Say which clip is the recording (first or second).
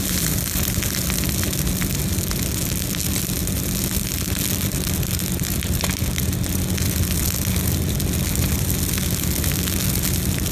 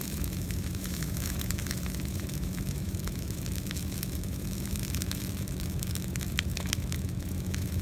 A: first